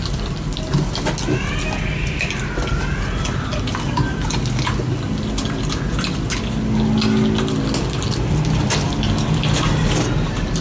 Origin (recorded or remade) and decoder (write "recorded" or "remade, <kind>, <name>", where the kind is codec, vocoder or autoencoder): recorded